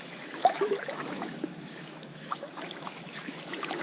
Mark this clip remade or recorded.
remade